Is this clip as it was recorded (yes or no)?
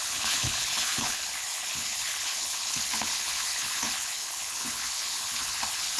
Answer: no